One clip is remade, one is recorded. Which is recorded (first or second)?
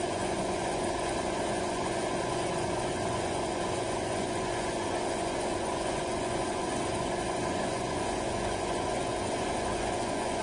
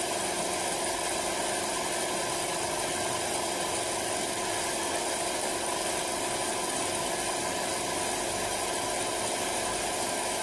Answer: second